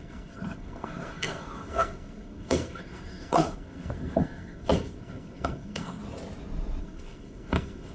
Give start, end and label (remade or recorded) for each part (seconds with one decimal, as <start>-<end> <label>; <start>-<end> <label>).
0.0-6.0 remade; 6.0-6.8 recorded; 6.8-7.9 remade

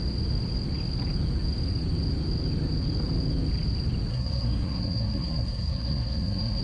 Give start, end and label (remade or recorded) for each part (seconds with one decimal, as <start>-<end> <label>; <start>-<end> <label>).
0.0-4.1 recorded; 4.1-6.6 remade